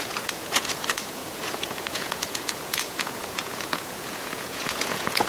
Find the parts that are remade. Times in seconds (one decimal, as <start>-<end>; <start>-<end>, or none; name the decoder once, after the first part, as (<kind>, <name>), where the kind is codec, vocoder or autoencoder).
0.0-5.3 (vocoder, Vocos)